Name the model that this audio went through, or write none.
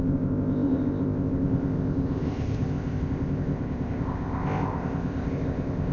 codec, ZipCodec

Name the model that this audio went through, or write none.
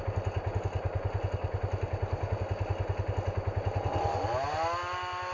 none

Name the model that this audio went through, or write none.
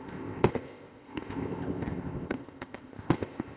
codec, ZipCodec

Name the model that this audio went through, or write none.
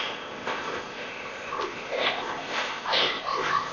codec, ZipCodec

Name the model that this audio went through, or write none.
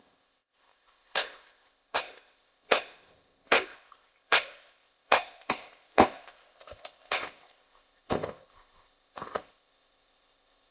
codec, ZipCodec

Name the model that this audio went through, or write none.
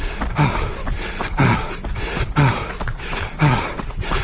none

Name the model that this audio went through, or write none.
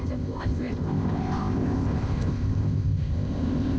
codec, ZipCodec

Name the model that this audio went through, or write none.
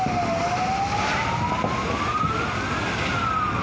none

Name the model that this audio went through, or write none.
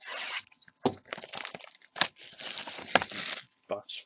none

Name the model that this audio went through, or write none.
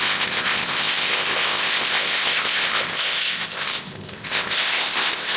codec, ZipCodec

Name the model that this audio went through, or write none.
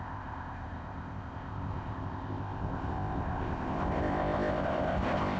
codec, ZipCodec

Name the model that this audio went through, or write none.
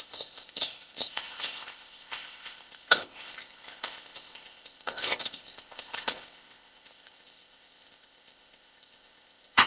codec, ZipCodec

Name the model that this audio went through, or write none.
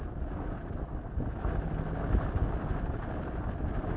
none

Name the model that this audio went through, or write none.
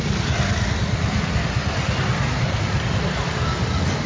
none